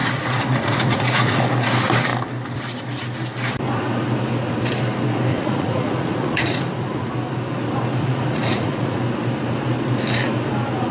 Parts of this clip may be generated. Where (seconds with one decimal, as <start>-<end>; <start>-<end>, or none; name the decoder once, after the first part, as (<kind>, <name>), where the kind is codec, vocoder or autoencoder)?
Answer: 0.0-1.4 (vocoder, Vocos); 5.3-7.1; 8.0-9.0